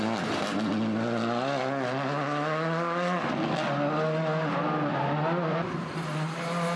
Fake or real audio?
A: real